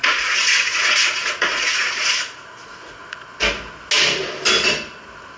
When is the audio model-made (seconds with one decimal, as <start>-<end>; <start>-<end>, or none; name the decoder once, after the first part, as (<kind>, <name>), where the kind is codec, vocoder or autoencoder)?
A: 0.0-3.2 (vocoder, Vocos)